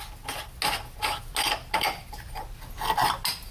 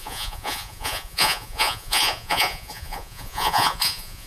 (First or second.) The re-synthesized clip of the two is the second